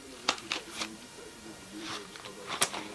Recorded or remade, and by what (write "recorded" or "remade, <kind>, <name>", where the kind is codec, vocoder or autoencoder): remade, vocoder, BigVGAN v2